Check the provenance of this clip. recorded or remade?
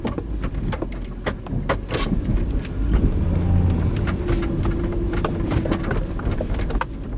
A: recorded